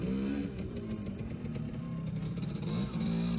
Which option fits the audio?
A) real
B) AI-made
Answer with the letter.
A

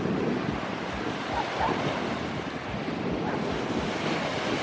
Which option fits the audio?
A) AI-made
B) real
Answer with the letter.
B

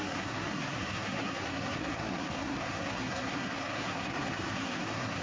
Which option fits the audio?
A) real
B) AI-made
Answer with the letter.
B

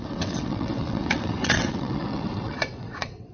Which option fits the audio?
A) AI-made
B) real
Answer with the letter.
A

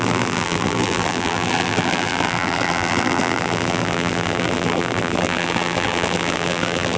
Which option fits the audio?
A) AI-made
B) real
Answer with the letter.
A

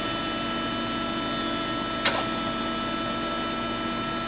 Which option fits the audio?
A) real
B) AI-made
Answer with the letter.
A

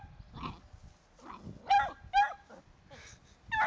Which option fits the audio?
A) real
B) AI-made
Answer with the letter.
A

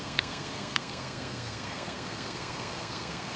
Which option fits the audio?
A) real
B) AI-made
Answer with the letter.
B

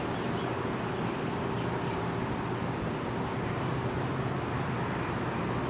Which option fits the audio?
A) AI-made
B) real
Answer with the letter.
B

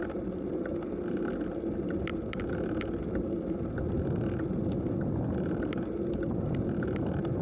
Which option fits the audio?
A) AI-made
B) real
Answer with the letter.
B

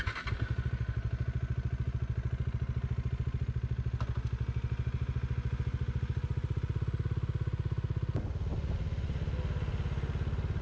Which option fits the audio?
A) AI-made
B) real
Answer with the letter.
B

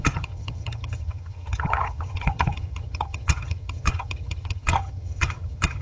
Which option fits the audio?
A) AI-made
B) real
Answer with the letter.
A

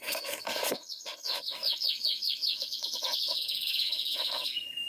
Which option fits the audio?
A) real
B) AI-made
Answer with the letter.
B